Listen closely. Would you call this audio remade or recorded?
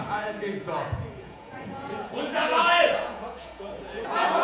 remade